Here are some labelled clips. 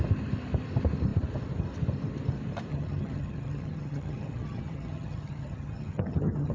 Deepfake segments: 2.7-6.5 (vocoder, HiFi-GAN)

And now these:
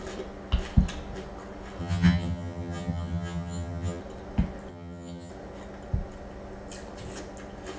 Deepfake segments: 1.8-4.0 (vocoder, HiFi-GAN); 4.7-5.3

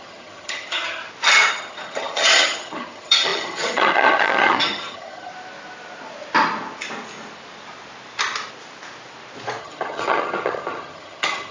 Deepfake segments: 0.0-1.0 (vocoder, HiFi-GAN); 1.5-5.3; 9.6-11.5

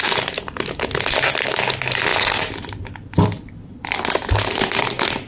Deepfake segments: none

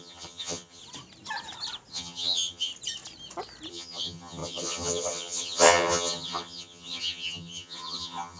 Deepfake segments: 0.0-0.8 (vocoder, HiFi-GAN); 1.9-2.7; 3.7-8.4

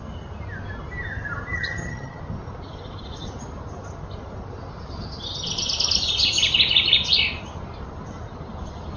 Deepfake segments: 1.5-2.2 (vocoder, HiFi-GAN)